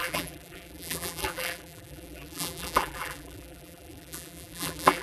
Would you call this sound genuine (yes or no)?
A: no